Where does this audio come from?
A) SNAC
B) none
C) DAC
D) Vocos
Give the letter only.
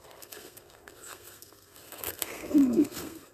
A